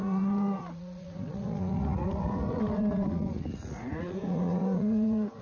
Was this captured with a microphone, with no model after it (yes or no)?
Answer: no